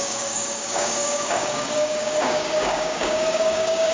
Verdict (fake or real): fake